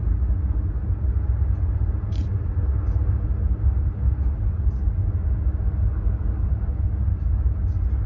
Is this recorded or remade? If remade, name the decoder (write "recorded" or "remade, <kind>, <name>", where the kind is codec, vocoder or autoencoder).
recorded